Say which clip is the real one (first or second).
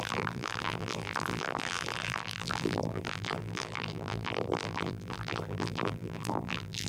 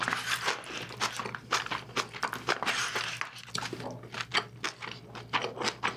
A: second